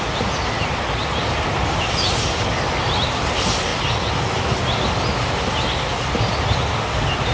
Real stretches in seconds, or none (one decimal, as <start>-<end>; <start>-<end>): 0.0-7.3